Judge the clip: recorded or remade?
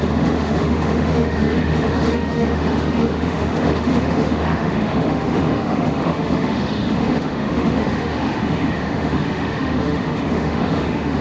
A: remade